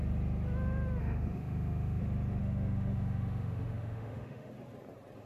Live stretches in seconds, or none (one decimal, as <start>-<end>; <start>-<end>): 0.0-1.0; 2.0-2.4; 4.5-5.3